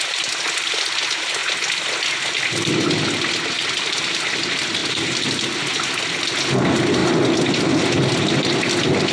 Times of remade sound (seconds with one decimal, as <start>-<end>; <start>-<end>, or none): none

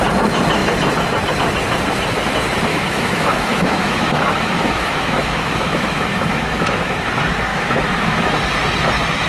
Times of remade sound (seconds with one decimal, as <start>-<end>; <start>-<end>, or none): 2.7-6.9; 7.5-8.3

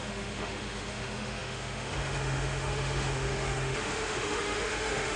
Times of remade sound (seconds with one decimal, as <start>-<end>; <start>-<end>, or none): 0.0-5.2

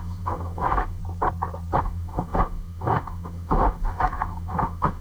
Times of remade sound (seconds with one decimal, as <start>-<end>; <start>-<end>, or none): 0.0-1.0; 1.8-5.0